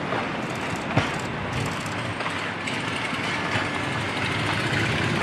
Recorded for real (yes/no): yes